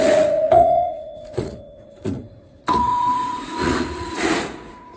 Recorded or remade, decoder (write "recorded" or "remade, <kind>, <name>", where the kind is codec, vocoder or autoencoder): remade, vocoder, Vocos